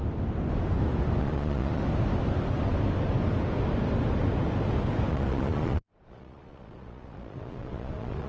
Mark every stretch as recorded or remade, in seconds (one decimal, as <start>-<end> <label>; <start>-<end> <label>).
0.0-1.2 recorded; 1.2-1.8 remade; 1.8-5.1 recorded; 5.1-8.3 remade